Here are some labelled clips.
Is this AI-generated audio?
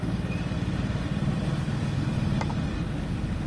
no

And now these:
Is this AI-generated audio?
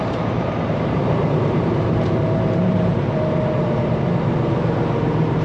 yes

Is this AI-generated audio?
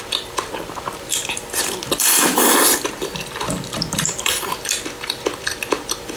yes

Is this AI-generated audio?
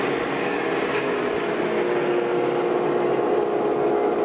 no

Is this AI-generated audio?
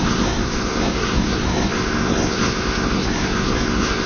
yes